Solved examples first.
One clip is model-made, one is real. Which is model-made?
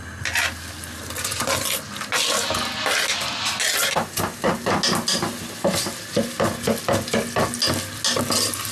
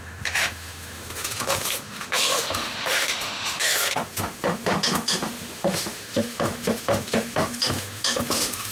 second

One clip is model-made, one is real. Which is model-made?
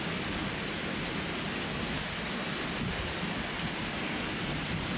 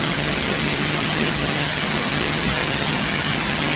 second